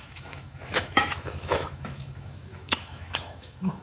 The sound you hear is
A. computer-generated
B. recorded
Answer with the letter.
A